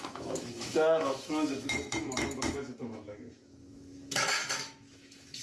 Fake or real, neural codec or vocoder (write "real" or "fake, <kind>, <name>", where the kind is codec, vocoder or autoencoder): fake, autoencoder, DAC-VAE